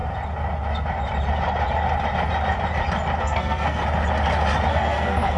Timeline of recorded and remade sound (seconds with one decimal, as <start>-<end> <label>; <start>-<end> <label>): 0.0-3.2 recorded; 3.2-3.8 remade; 3.8-4.7 recorded; 4.7-5.4 remade